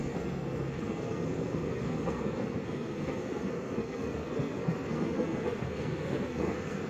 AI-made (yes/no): yes